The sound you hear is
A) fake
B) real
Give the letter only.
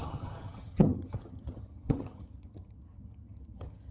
A